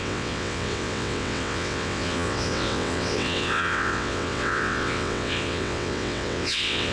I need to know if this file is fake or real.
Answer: fake